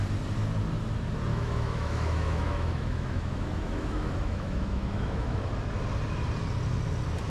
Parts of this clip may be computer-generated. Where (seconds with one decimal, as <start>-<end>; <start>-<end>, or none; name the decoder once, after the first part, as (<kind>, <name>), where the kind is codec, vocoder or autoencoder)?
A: 1.3-5.5 (autoencoder, DAC-VAE)